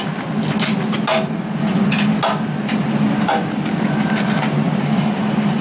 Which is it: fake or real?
real